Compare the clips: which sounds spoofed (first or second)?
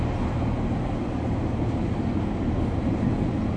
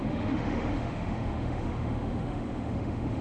second